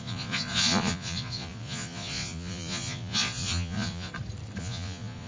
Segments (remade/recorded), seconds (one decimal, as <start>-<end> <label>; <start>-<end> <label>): 0.0-4.1 remade; 4.1-4.6 recorded; 4.6-5.3 remade